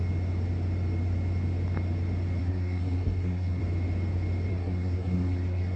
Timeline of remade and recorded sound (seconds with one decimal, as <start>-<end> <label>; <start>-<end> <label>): 0.0-2.4 recorded; 2.4-3.6 remade; 3.6-4.5 recorded; 4.5-5.8 remade